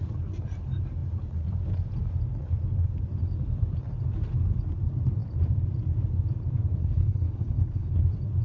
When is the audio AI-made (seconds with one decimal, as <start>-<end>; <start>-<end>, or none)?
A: 6.8-8.0